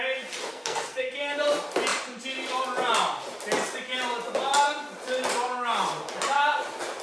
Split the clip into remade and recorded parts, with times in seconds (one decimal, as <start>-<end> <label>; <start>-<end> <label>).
0.0-0.5 recorded; 0.5-1.1 remade; 1.1-7.0 recorded